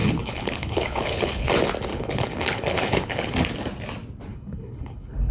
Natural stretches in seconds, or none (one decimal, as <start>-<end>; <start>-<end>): 1.5-1.9; 3.3-4.3